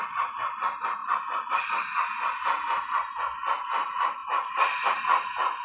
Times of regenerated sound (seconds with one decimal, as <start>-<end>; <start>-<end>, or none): 1.0-1.5; 4.2-4.9